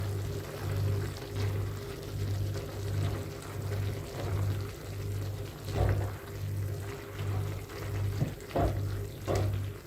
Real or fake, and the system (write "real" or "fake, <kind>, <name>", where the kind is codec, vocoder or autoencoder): real